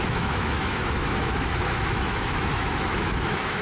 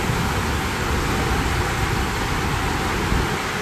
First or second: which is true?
second